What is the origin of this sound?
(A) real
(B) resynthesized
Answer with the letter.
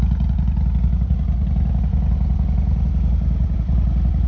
A